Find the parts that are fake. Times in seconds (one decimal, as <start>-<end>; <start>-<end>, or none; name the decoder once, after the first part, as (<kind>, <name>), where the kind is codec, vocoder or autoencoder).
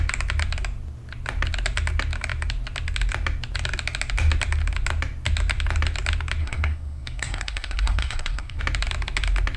6.4-8.6 (codec, SNAC)